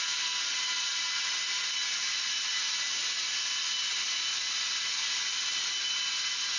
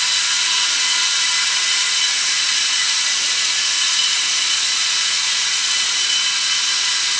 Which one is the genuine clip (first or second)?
first